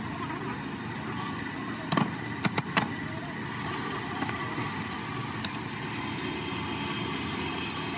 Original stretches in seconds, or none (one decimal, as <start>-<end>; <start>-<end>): 0.0-8.0